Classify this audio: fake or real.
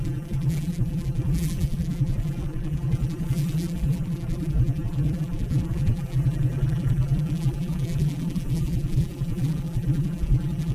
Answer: fake